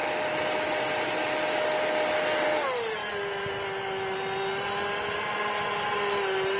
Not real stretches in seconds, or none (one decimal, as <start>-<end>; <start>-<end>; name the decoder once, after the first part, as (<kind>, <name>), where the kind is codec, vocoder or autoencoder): none